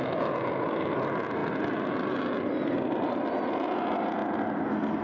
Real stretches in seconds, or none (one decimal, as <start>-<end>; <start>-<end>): 0.0-5.0